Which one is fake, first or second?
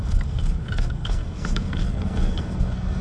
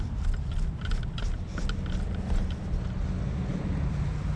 first